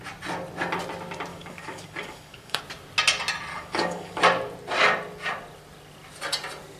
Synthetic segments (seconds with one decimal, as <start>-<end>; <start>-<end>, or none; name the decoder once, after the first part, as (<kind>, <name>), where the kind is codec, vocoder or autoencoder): 1.3-2.6 (codec, DAC); 3.5-4.2

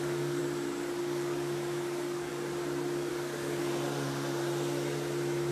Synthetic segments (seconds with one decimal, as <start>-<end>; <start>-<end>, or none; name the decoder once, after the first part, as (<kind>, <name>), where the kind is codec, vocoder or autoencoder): 0.0-0.4 (codec, DAC); 1.0-2.3; 3.1-3.6

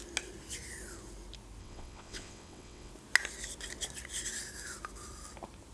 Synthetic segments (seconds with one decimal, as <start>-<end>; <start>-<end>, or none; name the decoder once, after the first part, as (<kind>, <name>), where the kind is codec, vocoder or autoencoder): 1.6-2.9 (vocoder, WaveNeXt)

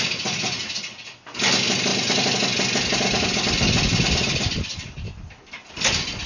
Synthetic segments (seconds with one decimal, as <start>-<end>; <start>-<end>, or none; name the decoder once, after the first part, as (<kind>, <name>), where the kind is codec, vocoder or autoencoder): none

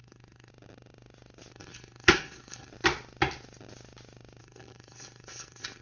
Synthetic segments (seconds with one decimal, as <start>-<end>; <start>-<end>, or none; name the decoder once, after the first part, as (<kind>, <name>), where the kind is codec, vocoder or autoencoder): 0.0-0.5 (codec, SNAC); 1.5-2.7; 4.4-5.8

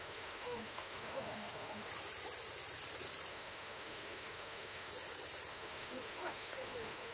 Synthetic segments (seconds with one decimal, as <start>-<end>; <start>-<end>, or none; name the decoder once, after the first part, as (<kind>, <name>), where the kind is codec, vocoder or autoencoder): 0.0-1.9 (autoencoder, DAC-VAE); 3.3-4.9; 5.5-7.1

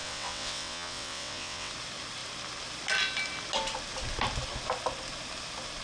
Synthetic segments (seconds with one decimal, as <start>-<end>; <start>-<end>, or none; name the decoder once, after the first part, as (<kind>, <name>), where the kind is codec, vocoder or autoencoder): 0.0-1.7 (vocoder, WaveNeXt)

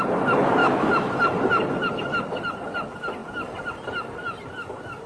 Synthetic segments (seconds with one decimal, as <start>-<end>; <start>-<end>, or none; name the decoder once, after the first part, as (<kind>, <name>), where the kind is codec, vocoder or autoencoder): 0.6-1.1 (autoencoder, DAC-VAE)